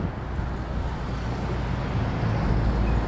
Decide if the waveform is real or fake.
real